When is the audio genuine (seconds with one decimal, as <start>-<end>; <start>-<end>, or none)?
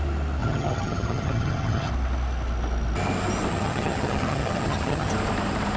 0.0-0.4; 1.9-3.5; 5.1-5.8